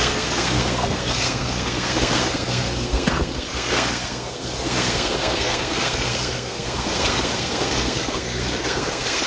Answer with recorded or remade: remade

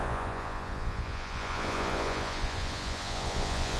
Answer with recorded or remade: remade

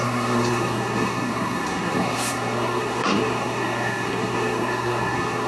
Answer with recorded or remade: remade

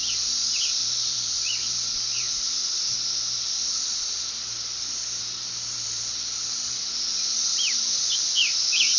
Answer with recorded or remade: remade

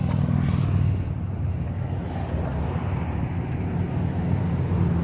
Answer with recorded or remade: recorded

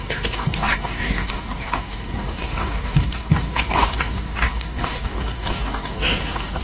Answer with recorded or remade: remade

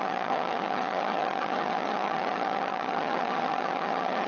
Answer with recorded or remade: remade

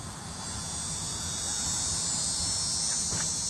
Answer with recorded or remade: recorded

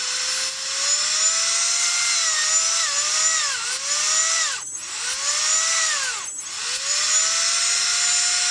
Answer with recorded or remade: recorded